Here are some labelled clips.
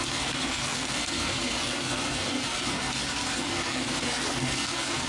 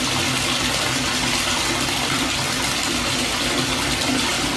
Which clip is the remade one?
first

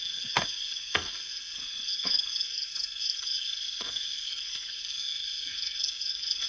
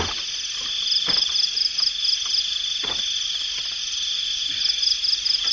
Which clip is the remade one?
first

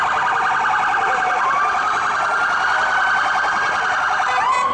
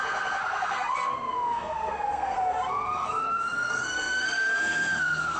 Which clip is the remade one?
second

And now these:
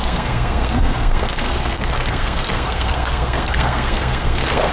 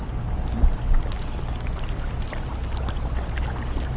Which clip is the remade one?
first